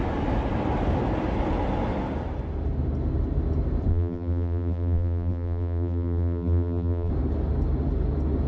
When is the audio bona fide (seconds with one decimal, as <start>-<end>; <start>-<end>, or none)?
0.0-3.9; 7.1-8.5